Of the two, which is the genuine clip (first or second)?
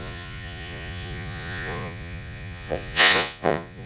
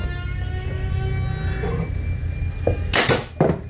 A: second